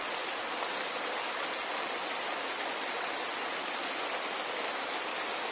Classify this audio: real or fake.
real